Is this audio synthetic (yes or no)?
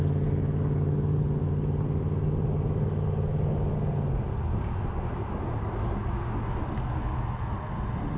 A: no